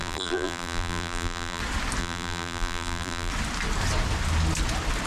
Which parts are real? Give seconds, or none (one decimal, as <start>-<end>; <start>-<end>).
1.6-2.0; 3.3-5.1